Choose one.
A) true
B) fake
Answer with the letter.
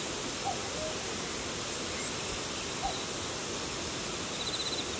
A